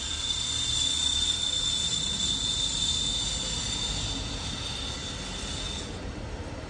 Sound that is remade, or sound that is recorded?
recorded